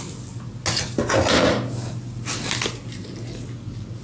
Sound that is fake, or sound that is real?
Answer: real